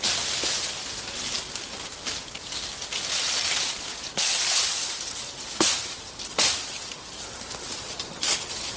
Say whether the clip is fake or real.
real